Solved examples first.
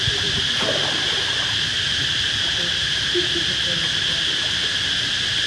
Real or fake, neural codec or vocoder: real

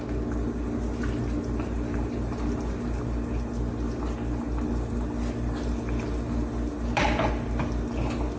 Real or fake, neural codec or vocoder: real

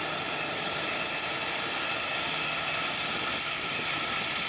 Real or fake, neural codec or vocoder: real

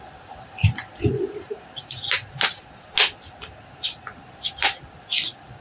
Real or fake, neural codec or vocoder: real